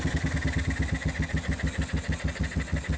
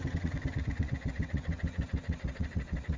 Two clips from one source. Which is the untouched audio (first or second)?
first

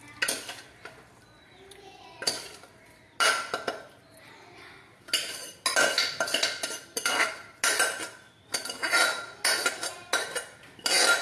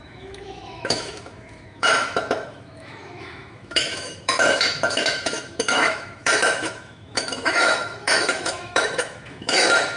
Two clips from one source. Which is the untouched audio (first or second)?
first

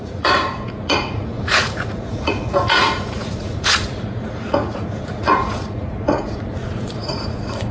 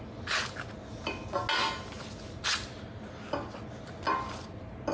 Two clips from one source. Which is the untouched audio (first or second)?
second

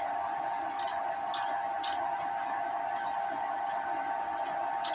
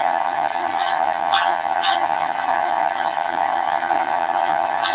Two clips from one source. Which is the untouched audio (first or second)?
first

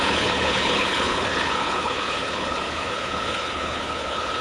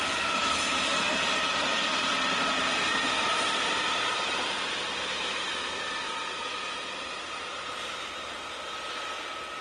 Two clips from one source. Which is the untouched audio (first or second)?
second